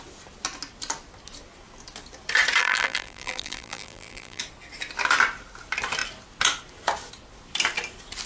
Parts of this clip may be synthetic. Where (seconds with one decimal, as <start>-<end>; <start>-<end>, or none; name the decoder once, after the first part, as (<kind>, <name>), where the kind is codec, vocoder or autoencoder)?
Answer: 2.6-4.4 (vocoder, BigVGAN v2)